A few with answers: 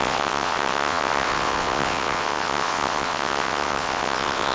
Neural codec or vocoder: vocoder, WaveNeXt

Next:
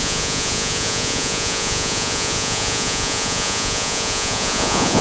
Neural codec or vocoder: vocoder, Vocos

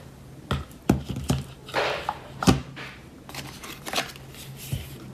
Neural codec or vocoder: none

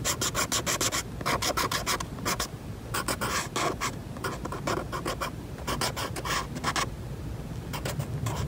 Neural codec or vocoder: none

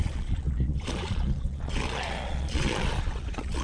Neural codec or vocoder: vocoder, Vocos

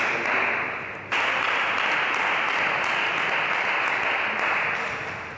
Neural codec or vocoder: none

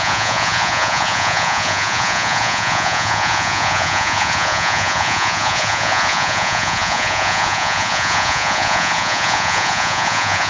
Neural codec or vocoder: vocoder, Vocos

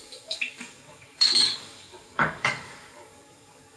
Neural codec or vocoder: codec, DAC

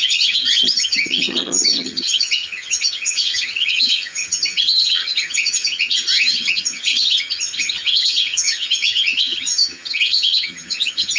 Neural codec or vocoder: vocoder, HiFi-GAN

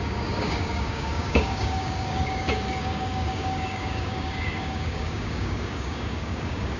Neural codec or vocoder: codec, DAC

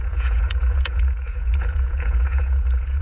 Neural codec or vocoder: vocoder, Vocos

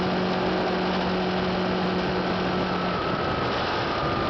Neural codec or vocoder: none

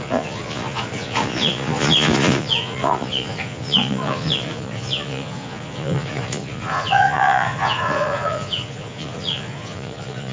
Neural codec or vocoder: vocoder, Vocos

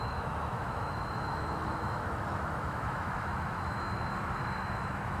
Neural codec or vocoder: autoencoder, DAC-VAE